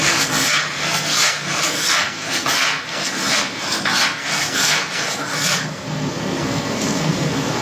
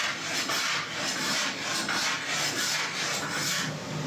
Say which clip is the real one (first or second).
second